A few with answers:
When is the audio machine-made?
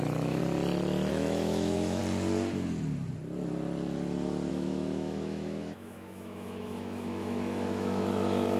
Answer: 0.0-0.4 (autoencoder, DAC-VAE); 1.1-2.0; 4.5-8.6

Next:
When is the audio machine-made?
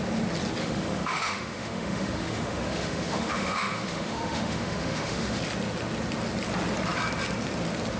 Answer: 0.6-5.4 (autoencoder, DAC-VAE)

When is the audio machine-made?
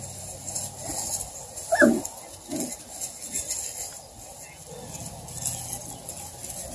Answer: none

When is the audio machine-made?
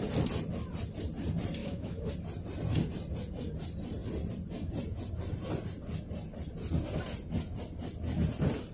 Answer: 1.6-2.1 (autoencoder, DAC-VAE)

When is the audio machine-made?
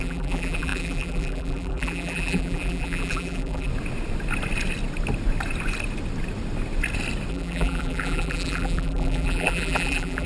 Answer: 0.0-3.7 (vocoder, BigVGAN v2); 7.3-10.3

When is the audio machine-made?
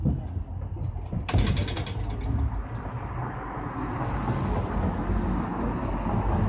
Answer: none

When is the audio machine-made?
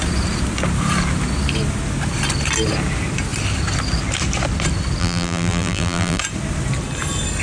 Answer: 5.0-6.2 (vocoder, BigVGAN v2)